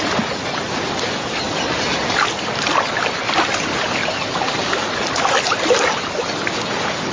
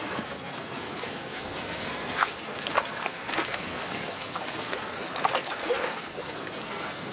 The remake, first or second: second